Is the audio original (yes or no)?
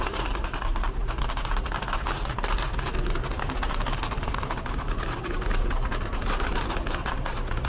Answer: yes